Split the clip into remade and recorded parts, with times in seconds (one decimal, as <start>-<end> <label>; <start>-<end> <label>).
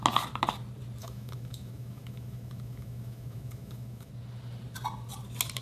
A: 0.0-1.0 recorded; 1.0-4.1 remade; 4.1-5.6 recorded